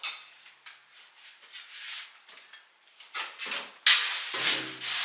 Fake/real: real